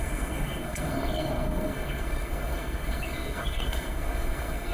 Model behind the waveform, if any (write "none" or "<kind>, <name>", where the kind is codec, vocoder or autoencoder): codec, SNAC